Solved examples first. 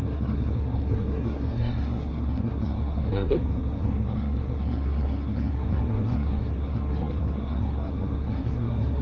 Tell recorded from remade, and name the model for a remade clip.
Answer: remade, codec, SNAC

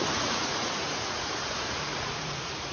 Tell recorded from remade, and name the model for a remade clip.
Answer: remade, vocoder, Vocos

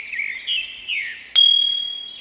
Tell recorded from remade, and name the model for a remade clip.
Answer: recorded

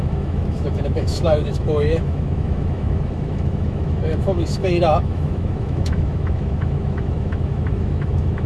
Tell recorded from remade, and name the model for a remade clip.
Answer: remade, autoencoder, DAC-VAE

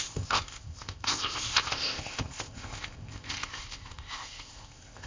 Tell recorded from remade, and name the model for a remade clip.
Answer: remade, codec, ZipCodec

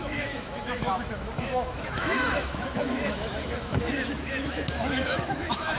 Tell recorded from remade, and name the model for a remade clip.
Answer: remade, autoencoder, DAC-VAE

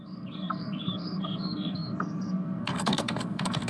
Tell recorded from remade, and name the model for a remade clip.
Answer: remade, codec, SNAC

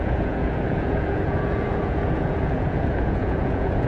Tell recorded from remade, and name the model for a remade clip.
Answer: remade, vocoder, Vocos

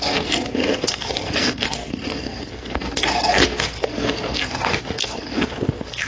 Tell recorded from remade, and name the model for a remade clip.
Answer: remade, codec, SNAC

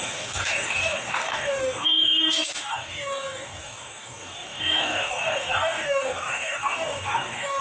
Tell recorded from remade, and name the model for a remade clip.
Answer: remade, codec, DAC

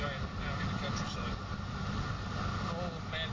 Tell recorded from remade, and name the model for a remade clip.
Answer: recorded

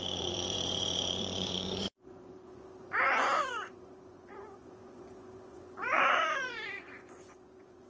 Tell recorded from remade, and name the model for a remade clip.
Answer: remade, vocoder, Vocos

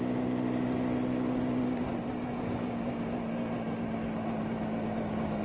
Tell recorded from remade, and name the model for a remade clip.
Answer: recorded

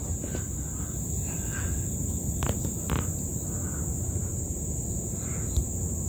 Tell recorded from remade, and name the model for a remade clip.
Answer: recorded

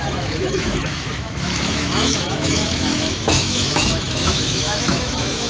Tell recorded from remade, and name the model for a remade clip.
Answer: remade, autoencoder, DAC-VAE